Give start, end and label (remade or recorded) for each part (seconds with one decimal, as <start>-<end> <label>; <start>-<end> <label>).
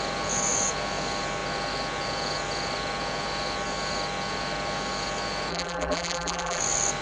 0.0-5.5 recorded; 5.5-6.6 remade; 6.6-7.0 recorded